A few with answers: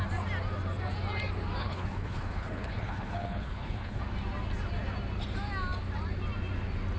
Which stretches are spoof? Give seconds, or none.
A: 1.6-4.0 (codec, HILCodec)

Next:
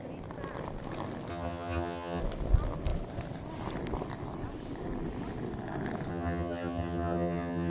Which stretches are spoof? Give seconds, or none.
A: 1.3-2.2 (vocoder, HiFi-GAN); 6.1-7.7

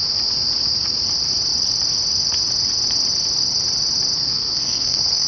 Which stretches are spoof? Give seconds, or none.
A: 4.3-5.3 (codec, SNAC)

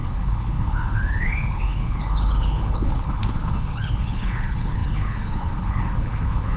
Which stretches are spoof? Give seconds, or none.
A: 0.0-6.6 (codec, HILCodec)

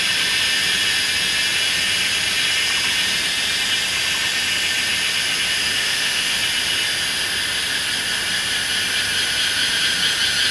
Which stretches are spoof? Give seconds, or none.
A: 5.6-6.4 (autoencoder, DAC-VAE)

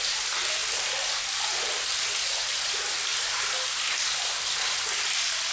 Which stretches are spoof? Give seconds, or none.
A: none

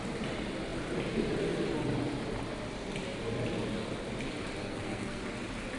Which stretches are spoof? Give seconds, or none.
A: 4.6-5.2 (codec, SNAC)